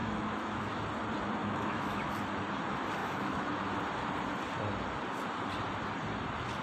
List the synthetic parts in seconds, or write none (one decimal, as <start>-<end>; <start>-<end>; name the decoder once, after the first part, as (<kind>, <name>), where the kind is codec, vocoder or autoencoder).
0.0-0.8 (autoencoder, DAC-VAE); 1.4-2.1; 3.0-3.6